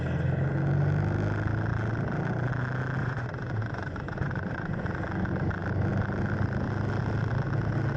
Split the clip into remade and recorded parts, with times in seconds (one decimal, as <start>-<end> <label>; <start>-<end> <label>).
0.0-3.0 recorded; 3.0-4.8 remade; 4.8-8.0 recorded